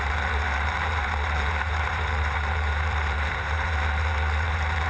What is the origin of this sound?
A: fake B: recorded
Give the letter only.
A